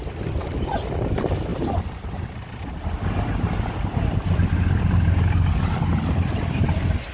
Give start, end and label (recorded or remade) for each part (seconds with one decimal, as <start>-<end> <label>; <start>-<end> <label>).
0.0-7.1 recorded